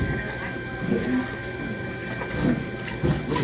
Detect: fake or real real